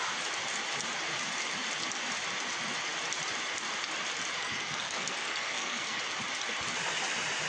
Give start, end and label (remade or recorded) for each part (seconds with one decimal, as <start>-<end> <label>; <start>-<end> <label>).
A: 0.0-4.4 recorded; 4.4-6.0 remade; 6.0-7.5 recorded